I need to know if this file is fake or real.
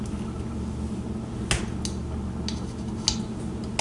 real